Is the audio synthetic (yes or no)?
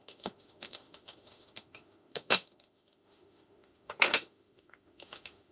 yes